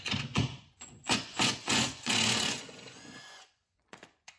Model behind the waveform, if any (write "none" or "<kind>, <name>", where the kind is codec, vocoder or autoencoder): vocoder, Vocos